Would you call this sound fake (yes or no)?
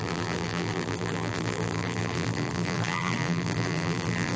yes